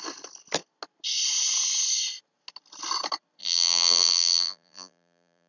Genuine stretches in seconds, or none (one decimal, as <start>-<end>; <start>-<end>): 0.0-3.4